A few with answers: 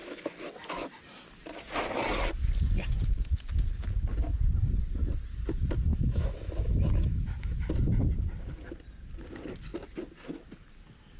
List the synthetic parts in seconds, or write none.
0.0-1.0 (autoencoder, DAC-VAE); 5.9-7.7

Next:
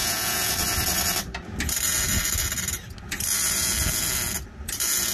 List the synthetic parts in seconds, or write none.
0.0-0.5 (vocoder, Vocos)